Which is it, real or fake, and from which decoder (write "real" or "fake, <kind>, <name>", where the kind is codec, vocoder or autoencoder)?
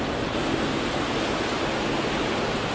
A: real